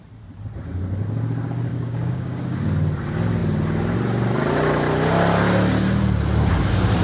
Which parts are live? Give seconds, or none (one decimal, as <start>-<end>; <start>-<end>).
0.0-1.7; 2.6-7.0

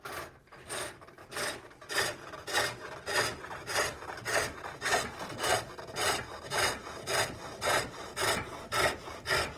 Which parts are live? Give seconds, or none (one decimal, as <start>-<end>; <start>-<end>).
0.0-9.6

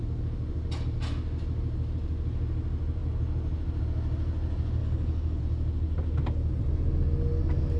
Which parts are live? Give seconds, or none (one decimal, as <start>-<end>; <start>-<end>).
0.0-4.8; 5.4-7.8

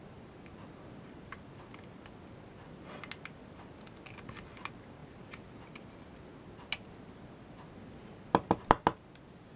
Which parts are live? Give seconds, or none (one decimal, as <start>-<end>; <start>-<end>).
0.0-9.6

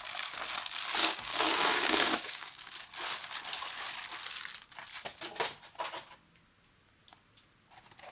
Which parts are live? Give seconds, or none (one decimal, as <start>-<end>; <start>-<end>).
0.0-1.0; 2.7-8.1

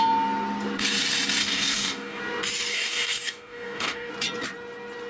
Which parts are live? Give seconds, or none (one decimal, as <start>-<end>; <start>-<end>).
0.0-1.4; 2.2-2.7; 4.1-5.1